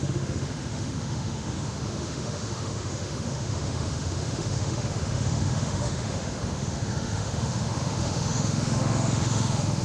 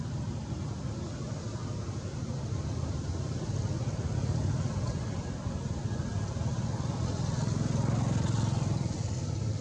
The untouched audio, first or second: second